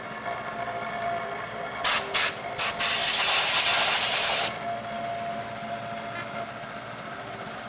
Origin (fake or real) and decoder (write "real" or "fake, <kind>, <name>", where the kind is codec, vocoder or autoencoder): real